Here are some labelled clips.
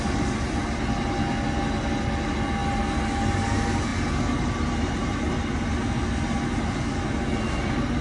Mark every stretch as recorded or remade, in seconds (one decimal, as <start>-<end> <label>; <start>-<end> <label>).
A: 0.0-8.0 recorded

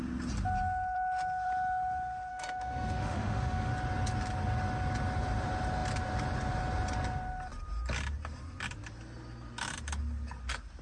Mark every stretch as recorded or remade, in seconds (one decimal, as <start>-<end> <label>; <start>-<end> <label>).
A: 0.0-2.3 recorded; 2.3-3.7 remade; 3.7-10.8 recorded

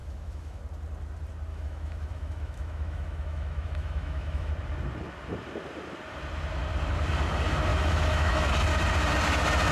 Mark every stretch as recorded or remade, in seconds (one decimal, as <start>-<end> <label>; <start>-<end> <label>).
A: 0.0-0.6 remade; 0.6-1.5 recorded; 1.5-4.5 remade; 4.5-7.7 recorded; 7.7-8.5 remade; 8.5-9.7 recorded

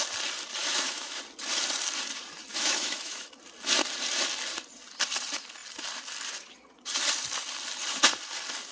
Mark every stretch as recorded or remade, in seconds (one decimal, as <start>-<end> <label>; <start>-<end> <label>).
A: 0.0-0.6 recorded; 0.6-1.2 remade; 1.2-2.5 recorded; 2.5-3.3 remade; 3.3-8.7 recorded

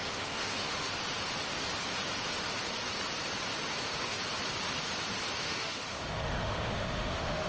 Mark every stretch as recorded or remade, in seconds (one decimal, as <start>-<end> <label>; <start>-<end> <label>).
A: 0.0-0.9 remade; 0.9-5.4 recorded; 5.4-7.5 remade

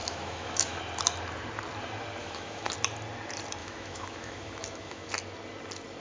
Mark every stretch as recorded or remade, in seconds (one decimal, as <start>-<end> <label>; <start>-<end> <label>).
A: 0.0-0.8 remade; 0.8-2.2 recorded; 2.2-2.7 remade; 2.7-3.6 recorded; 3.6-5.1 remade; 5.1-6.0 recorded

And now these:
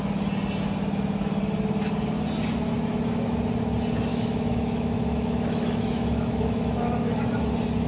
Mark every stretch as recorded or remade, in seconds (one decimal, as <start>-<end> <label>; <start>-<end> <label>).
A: 0.0-4.1 recorded; 4.1-7.4 remade; 7.4-7.9 recorded

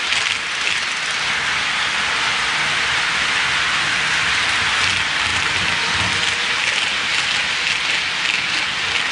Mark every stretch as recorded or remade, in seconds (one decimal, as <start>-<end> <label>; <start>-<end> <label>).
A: 0.0-9.1 recorded